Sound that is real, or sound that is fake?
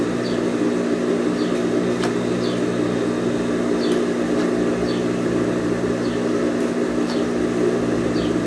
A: real